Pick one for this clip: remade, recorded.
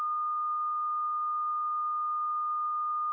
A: recorded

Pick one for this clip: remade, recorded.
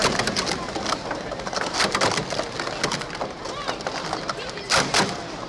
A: recorded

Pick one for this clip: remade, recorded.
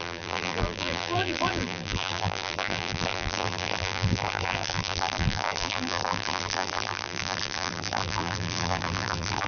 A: remade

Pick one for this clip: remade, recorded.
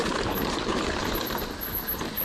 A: remade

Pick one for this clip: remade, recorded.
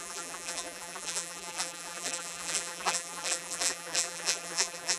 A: remade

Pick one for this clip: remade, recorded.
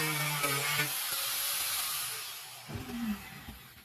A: remade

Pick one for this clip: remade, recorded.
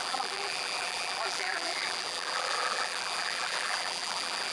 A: remade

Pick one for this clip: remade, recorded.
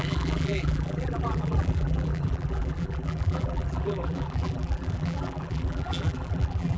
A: remade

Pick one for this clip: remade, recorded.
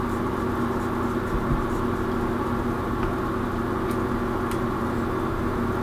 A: recorded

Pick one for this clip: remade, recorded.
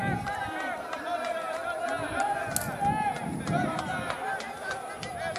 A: recorded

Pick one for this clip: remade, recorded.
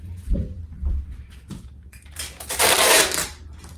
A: remade